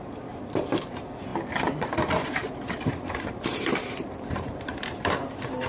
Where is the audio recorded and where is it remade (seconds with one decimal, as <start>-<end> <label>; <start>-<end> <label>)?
0.0-1.3 remade; 1.3-2.9 recorded; 2.9-5.7 remade